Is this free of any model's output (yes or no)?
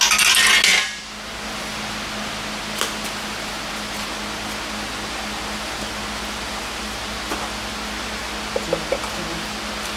yes